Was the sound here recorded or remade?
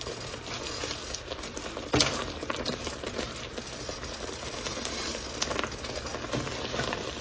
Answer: recorded